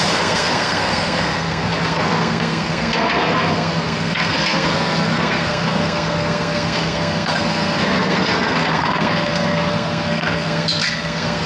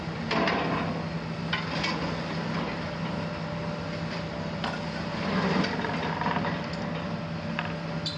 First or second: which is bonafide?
second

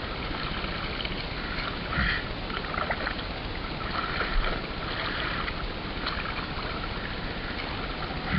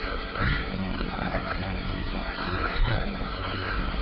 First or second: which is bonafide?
first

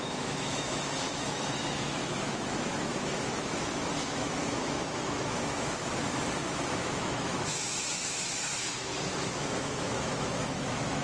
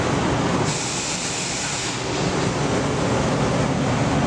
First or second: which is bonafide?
second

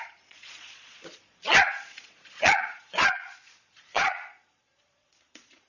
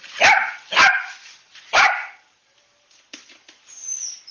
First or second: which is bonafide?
second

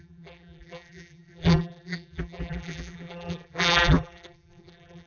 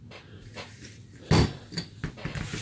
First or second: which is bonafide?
second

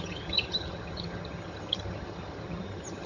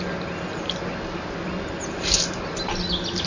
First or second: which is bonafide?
second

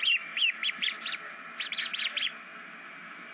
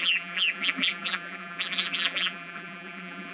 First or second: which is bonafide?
first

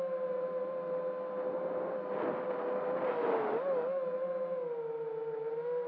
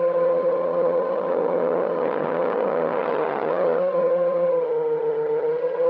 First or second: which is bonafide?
first